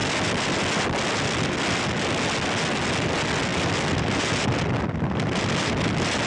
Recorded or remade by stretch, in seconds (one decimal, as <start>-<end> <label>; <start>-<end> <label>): 0.0-6.3 recorded